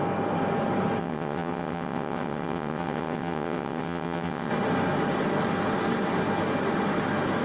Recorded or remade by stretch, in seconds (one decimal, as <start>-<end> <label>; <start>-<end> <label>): 0.0-1.0 recorded; 1.0-4.5 remade; 4.5-7.4 recorded